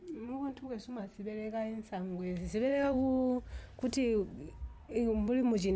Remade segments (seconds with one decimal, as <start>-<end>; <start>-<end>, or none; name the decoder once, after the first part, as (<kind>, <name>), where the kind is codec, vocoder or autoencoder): 0.0-1.0 (vocoder, Vocos); 2.7-3.4